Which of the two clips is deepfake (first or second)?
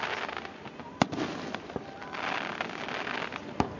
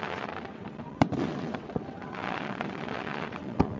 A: second